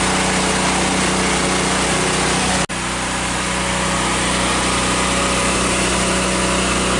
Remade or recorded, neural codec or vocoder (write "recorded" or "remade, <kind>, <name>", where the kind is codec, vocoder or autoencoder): recorded